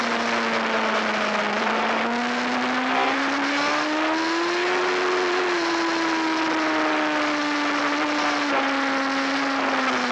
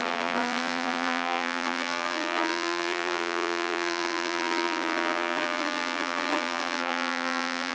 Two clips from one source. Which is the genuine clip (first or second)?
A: first